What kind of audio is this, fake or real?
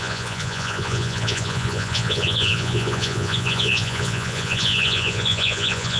fake